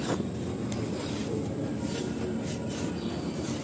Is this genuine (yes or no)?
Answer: yes